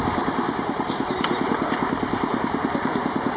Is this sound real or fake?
fake